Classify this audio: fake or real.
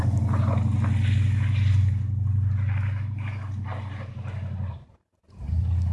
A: real